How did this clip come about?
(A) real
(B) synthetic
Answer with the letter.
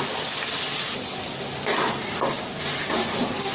A